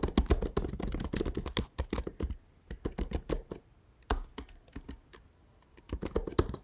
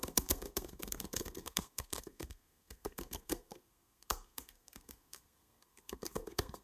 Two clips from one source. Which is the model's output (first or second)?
second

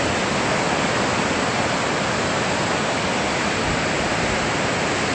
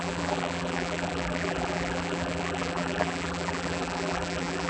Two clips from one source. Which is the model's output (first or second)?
second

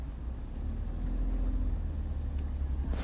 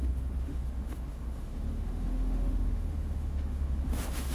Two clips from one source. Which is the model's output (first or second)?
second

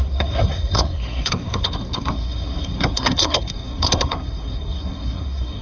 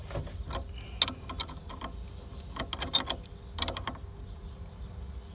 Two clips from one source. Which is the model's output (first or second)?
first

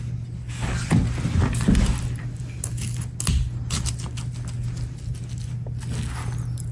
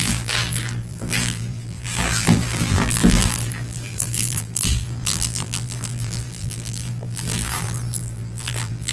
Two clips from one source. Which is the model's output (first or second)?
second